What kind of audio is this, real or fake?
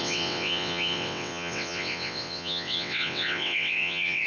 fake